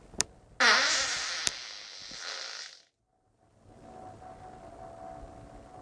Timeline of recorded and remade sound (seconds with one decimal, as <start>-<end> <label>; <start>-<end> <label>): 0.0-5.8 recorded